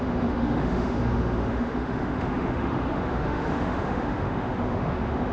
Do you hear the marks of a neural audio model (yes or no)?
yes